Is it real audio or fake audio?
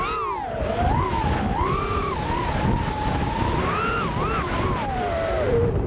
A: real